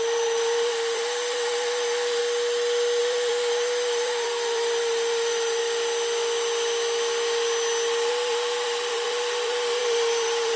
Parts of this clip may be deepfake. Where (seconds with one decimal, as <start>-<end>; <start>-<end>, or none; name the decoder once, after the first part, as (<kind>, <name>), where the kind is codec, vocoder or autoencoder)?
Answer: 0.0-2.2 (vocoder, BigVGAN v2); 3.0-5.6; 8.1-10.6